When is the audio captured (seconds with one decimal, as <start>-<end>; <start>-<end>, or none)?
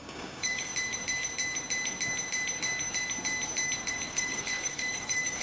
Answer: 0.7-3.9